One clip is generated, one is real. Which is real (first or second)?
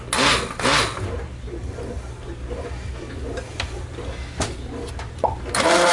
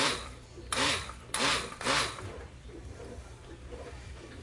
first